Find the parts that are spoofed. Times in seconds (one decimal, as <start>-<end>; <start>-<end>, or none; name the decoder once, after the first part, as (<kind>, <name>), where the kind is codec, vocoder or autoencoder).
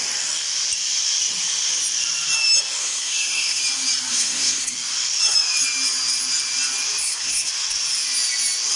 2.8-3.6 (codec, SNAC); 4.1-4.7; 7.0-7.5